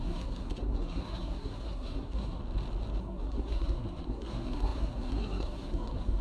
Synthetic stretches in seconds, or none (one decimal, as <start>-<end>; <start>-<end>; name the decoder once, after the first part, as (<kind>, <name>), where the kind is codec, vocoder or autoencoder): 0.0-2.4 (codec, SNAC); 3.0-6.2